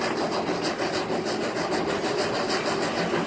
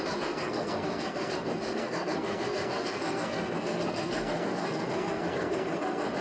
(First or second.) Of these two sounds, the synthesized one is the second